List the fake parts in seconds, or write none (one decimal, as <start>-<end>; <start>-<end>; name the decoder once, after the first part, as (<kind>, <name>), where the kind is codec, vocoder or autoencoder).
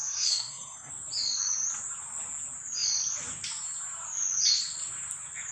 0.0-0.9 (codec, SNAC)